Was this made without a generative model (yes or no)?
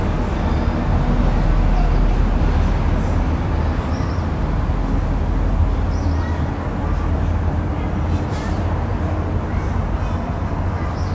yes